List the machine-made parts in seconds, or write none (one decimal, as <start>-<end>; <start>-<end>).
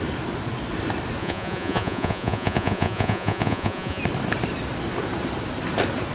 1.2-4.0